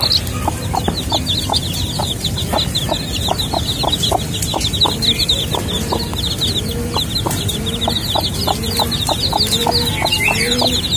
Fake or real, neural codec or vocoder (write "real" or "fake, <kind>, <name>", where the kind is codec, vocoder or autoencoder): real